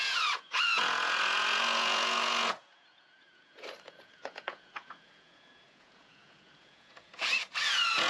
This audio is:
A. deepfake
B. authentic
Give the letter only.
A